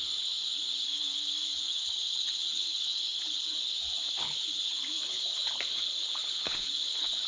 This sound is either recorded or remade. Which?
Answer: remade